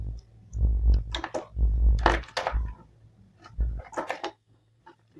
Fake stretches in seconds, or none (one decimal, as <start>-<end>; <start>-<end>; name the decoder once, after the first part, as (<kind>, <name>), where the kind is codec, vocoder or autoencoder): 4.2-4.8 (codec, SNAC)